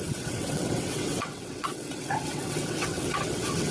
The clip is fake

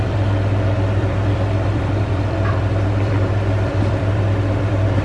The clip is fake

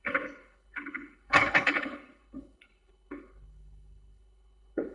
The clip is fake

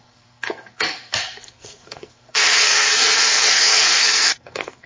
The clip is fake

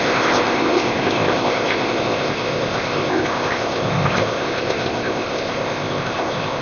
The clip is fake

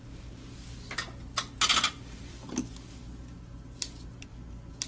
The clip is real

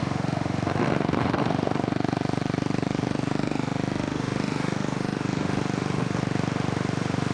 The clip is fake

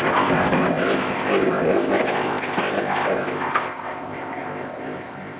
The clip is fake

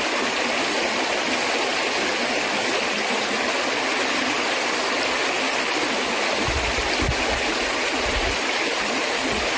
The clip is real